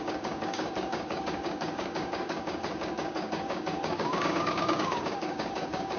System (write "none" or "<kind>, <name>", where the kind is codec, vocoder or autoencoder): codec, DAC